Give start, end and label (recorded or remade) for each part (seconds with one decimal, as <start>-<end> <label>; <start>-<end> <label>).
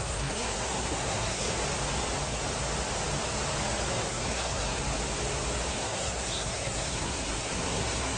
0.0-1.6 remade; 1.6-3.9 recorded; 3.9-4.8 remade; 4.8-5.7 recorded; 5.7-8.2 remade